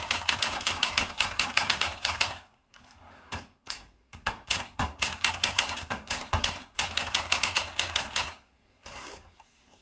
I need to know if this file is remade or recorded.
remade